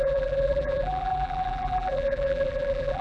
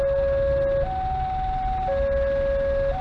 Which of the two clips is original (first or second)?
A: second